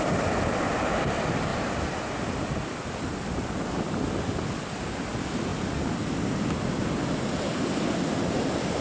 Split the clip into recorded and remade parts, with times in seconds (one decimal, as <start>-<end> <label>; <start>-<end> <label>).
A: 0.0-8.8 recorded